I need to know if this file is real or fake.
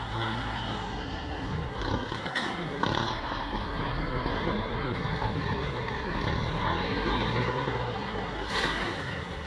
fake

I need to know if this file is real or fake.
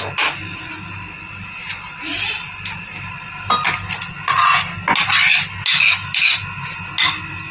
real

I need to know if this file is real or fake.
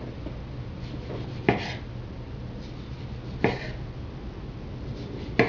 real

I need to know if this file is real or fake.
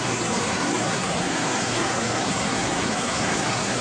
fake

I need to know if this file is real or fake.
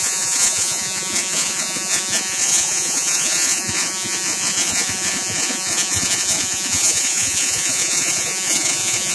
fake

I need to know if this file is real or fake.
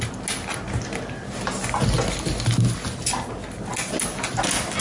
real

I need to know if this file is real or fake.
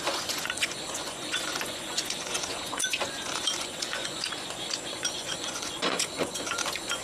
fake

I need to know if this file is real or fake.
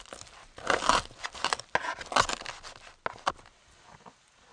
real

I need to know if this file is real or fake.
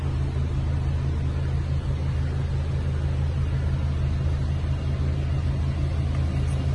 real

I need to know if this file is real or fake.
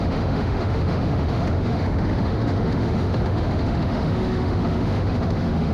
fake